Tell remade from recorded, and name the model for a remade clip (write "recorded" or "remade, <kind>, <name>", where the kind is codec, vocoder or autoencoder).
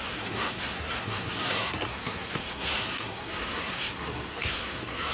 remade, codec, SNAC